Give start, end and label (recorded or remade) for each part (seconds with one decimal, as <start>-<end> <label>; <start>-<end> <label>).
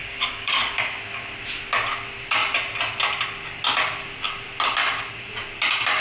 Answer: 0.0-0.6 remade; 0.6-6.0 recorded